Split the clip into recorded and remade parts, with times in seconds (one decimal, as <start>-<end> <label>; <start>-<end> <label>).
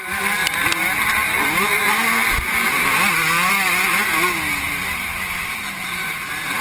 0.0-6.6 recorded